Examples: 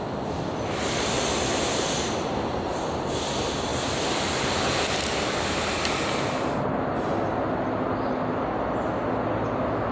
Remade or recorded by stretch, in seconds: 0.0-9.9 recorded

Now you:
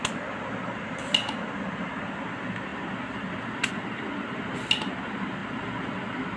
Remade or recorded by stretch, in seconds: 0.0-6.4 recorded

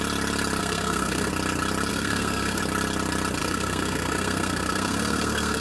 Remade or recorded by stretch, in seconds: 0.0-0.6 recorded; 0.6-1.3 remade; 1.3-1.9 recorded; 1.9-2.6 remade; 2.6-3.4 recorded; 3.4-5.6 remade

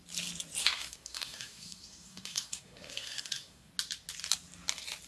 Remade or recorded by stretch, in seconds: 0.0-0.6 recorded; 0.6-3.7 remade; 3.7-5.1 recorded

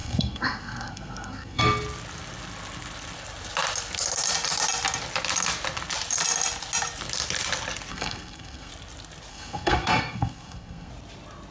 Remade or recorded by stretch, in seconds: 0.0-1.6 remade; 1.6-7.9 recorded; 7.9-8.7 remade; 8.7-9.3 recorded; 9.3-10.9 remade; 10.9-11.5 recorded

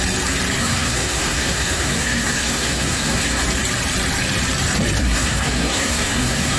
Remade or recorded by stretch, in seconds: 0.0-0.6 recorded; 0.6-3.4 remade; 3.4-5.0 recorded; 5.0-6.6 remade